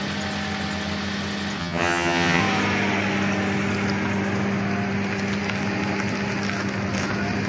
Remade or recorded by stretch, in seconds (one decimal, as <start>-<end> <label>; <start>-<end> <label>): 0.0-1.6 recorded; 1.6-2.4 remade; 2.4-7.5 recorded